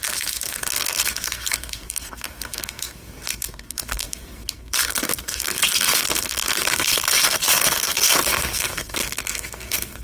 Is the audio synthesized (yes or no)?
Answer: yes